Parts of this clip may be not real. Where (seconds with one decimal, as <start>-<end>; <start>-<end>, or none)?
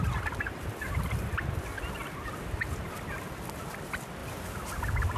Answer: none